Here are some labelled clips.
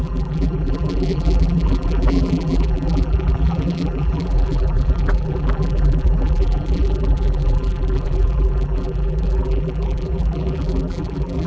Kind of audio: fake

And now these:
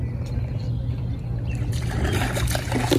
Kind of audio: real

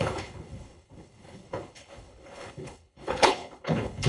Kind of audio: fake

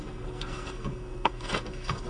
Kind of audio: fake